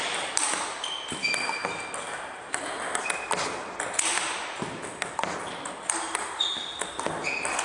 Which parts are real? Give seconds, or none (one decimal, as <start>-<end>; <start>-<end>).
1.6-2.5